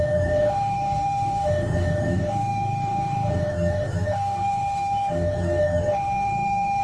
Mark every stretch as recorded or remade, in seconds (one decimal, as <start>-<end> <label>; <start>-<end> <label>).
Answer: 0.0-6.8 remade